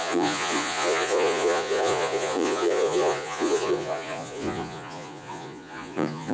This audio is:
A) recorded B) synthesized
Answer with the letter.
B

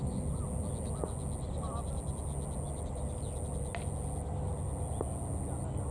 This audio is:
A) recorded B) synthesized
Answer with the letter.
A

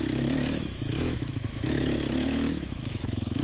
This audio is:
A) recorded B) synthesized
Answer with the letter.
B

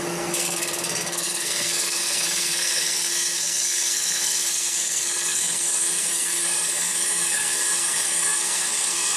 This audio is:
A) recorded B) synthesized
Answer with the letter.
B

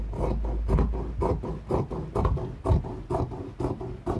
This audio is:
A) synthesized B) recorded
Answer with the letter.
B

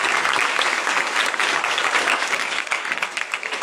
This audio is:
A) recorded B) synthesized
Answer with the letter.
B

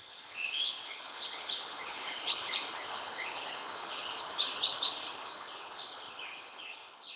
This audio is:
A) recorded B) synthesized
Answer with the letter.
B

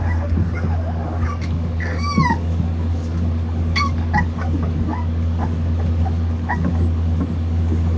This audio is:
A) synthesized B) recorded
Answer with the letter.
A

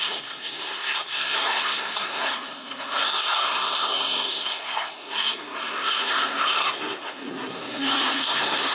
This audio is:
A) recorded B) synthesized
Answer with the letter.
B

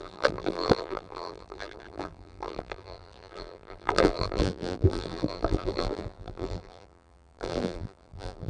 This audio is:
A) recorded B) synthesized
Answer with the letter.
B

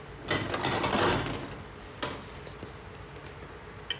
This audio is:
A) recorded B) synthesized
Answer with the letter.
A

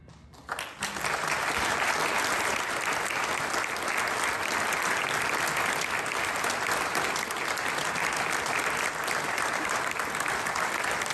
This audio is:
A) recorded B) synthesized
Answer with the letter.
A